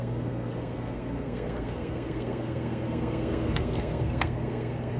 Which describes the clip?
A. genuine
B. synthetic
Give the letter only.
B